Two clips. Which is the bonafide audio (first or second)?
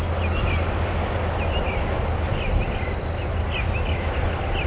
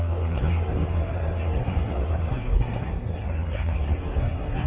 first